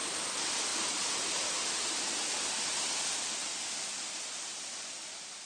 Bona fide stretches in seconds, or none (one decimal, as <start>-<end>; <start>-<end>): 0.0-5.5

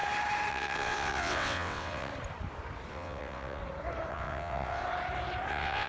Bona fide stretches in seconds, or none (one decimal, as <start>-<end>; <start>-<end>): 0.0-0.5; 2.1-2.9; 3.6-4.1; 4.8-5.5